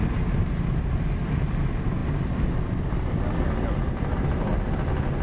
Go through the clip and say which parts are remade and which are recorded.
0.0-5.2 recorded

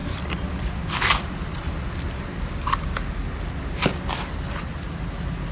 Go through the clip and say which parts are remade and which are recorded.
0.0-5.5 recorded